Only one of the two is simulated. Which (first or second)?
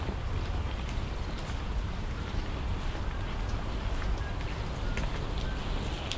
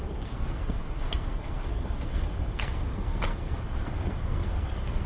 second